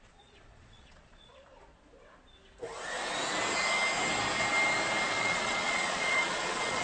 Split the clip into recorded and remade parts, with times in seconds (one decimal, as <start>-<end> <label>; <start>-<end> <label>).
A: 0.0-1.7 remade; 1.7-5.2 recorded; 5.2-6.8 remade